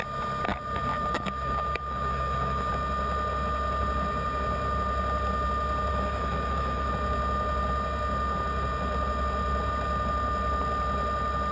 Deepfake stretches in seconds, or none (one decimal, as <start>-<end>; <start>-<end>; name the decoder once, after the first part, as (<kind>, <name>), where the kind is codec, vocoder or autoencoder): 0.9-2.7 (autoencoder, DAC-VAE); 5.9-6.9